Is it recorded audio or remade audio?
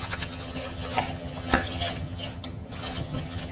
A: remade